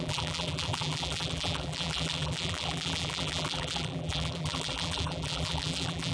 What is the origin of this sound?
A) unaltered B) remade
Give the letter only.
B